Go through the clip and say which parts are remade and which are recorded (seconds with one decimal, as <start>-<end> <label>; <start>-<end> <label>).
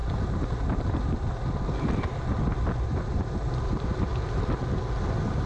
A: 0.0-2.8 recorded; 2.8-4.1 remade; 4.1-5.1 recorded; 5.1-5.5 remade